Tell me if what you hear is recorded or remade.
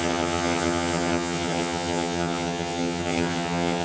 remade